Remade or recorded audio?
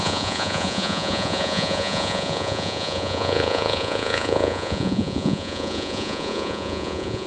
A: remade